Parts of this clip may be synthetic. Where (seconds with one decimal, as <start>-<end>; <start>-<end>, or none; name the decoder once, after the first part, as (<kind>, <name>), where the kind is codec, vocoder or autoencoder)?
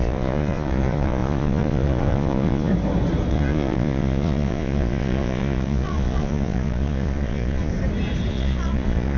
0.0-2.7 (vocoder, Vocos); 3.3-7.7; 8.3-9.2